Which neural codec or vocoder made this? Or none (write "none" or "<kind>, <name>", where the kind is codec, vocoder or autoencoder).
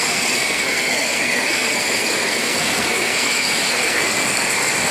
codec, SNAC